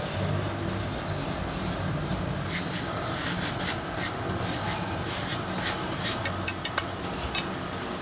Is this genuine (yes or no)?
yes